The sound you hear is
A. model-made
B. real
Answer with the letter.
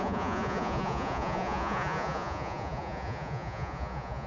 A